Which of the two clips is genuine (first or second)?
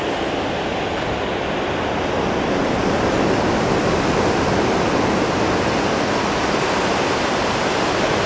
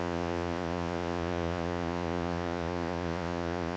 first